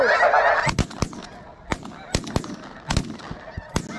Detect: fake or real real